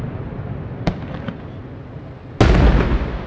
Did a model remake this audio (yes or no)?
no